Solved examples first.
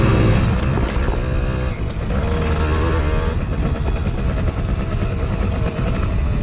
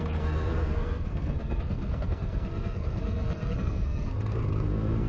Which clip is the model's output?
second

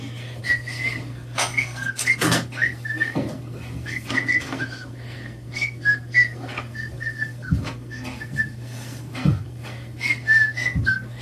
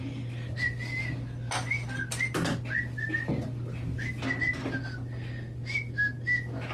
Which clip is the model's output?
first